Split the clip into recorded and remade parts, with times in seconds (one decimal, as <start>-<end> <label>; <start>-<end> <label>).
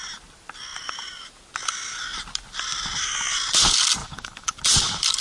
0.0-4.0 recorded; 4.0-4.6 remade; 4.6-5.2 recorded